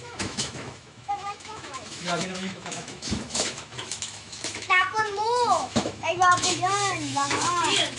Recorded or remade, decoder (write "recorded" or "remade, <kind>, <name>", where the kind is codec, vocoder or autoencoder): remade, autoencoder, DAC-VAE